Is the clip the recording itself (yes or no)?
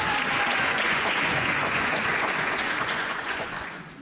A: no